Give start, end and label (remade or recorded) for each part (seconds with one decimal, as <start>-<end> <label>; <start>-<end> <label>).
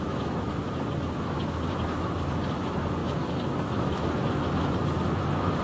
0.0-5.6 remade